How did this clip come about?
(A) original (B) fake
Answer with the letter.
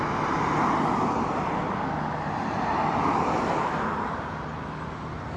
A